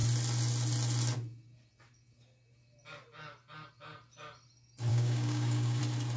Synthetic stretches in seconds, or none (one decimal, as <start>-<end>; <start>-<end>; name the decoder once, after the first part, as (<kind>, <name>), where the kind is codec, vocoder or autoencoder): 4.9-5.8 (codec, DAC)